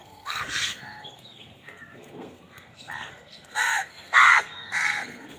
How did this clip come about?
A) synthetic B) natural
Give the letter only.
A